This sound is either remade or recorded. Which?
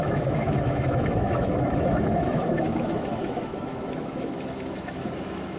remade